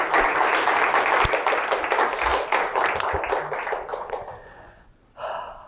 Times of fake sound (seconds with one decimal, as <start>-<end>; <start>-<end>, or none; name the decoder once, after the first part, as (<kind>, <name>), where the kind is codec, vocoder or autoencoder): 3.9-5.0 (vocoder, Vocos)